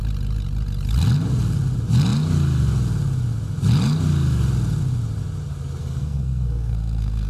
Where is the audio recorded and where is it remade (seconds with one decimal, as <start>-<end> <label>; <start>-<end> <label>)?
0.0-5.8 recorded; 5.8-7.3 remade